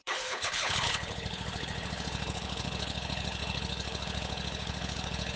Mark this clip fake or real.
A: fake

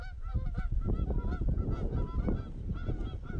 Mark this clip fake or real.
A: real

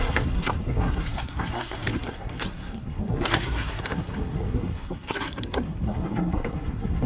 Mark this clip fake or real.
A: fake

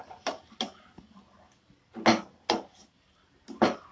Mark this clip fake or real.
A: real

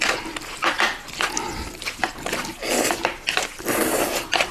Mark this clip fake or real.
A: real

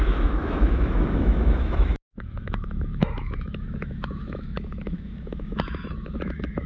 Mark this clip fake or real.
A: fake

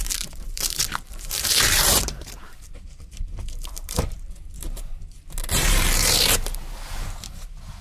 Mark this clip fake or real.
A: fake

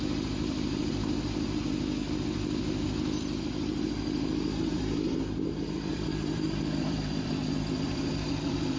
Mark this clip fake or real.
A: fake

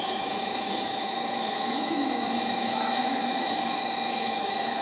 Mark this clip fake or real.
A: fake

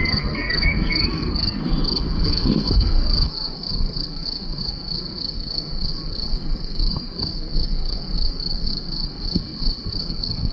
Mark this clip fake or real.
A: fake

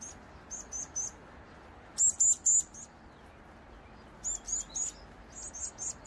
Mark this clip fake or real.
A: real